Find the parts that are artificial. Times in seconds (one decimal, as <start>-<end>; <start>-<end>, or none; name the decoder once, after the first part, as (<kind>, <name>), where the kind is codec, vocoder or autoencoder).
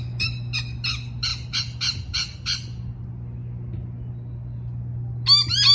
none